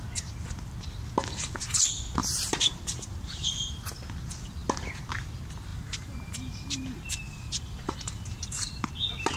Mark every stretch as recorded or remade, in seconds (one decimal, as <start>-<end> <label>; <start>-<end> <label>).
0.0-2.2 recorded; 2.2-3.7 remade; 3.7-5.7 recorded; 5.7-8.9 remade; 8.9-9.4 recorded